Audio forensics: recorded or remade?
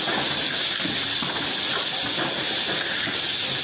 recorded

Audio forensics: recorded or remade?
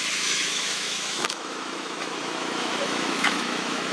remade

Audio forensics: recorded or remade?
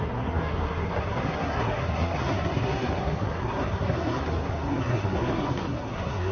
remade